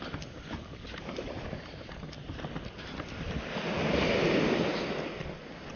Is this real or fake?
real